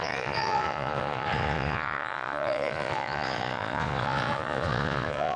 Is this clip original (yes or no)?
no